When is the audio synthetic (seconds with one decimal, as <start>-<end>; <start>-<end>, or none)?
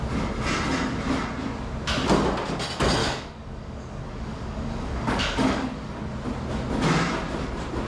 3.0-6.0